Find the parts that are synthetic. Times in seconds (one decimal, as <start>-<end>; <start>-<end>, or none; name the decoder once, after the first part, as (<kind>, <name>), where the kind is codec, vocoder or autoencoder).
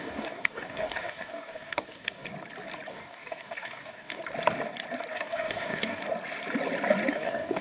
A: 0.0-2.3 (codec, DAC); 2.9-4.2; 5.1-6.0; 7.1-7.6